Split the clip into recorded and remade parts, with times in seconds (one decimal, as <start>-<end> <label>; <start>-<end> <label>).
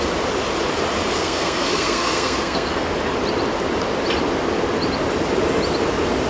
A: 0.0-1.2 recorded; 1.2-2.9 remade; 2.9-6.3 recorded